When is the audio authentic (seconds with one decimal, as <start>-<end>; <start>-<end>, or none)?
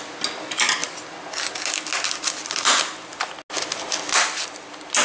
0.0-5.0